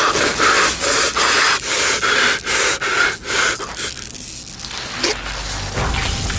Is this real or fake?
real